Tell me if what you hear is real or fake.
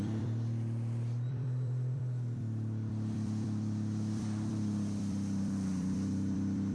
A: fake